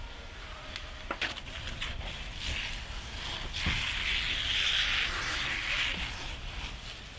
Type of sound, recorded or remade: recorded